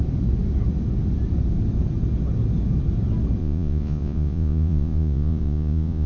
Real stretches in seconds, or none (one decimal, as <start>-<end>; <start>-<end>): 0.0-3.4